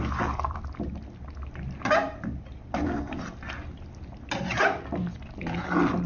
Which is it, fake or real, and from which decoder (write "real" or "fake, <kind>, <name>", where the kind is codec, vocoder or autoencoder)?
real